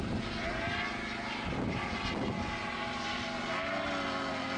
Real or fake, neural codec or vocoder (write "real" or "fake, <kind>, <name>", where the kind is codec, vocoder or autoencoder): real